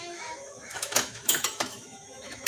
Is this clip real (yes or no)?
no